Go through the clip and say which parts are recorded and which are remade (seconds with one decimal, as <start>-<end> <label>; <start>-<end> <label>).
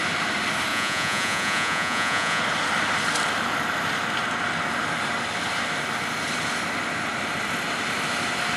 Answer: 0.0-0.7 recorded; 0.7-2.4 remade; 2.4-8.6 recorded